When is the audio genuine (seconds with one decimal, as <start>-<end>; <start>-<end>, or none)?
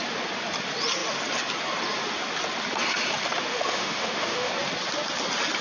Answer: 0.0-3.5; 4.5-5.6